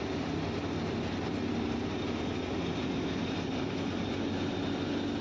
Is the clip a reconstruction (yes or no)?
no